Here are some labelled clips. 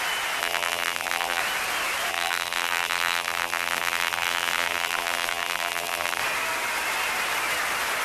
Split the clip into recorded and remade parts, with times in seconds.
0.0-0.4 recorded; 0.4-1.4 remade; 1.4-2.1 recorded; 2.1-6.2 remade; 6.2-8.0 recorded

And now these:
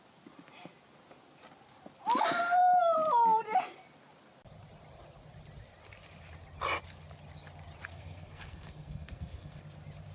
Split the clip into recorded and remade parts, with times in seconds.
0.0-7.9 recorded; 7.9-9.6 remade; 9.6-10.1 recorded

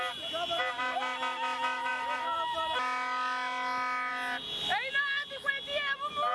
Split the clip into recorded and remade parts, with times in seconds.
0.0-6.3 recorded

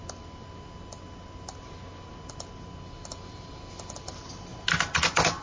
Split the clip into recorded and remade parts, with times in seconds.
0.0-5.4 recorded

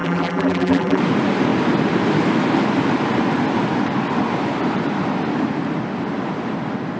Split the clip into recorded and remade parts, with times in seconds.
0.0-1.0 remade; 1.0-7.0 recorded

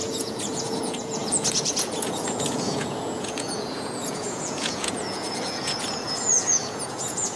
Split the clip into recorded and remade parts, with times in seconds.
0.0-7.4 remade